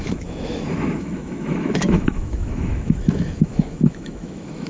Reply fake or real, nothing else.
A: fake